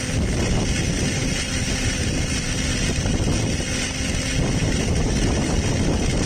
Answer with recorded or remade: recorded